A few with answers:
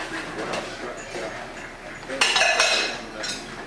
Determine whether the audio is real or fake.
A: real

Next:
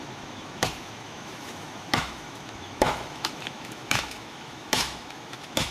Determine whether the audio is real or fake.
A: fake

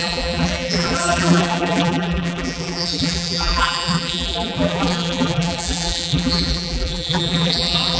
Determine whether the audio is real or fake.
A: fake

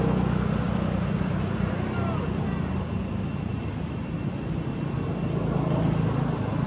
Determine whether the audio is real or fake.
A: real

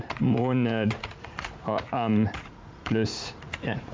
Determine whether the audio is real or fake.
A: fake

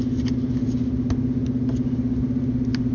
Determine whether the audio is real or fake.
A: real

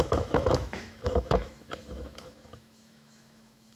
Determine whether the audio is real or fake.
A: fake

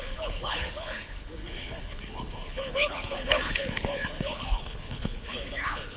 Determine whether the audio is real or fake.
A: fake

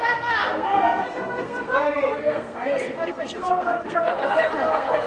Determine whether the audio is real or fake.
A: fake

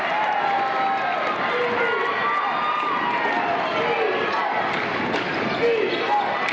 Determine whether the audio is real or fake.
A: real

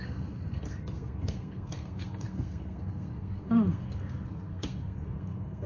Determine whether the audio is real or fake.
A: fake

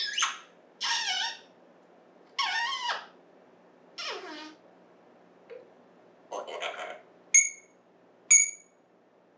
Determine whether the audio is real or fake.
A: real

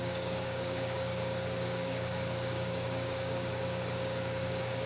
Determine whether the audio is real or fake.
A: fake